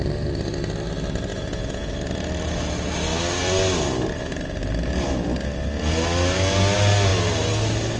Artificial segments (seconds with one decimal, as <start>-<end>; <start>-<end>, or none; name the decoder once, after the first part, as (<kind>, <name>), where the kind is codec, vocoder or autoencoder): 1.3-1.9 (vocoder, Vocos)

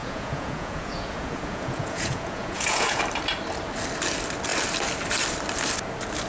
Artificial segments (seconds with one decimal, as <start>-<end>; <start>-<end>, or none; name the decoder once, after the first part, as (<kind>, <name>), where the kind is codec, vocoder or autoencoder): 0.0-3.0 (vocoder, Vocos)

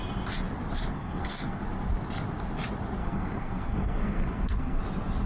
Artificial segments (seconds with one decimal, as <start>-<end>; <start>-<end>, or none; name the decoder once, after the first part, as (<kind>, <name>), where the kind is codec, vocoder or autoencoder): 0.9-1.6 (codec, SNAC); 3.0-4.8

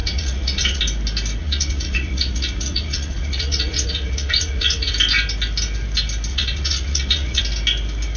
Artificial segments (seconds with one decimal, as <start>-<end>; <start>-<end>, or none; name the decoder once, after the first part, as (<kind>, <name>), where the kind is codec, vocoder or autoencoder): 0.0-0.8 (vocoder, Vocos); 1.4-4.9; 6.3-7.4

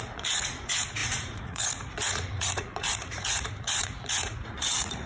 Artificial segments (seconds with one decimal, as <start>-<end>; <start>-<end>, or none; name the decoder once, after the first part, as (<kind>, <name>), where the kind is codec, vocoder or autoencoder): 0.0-5.1 (vocoder, Vocos)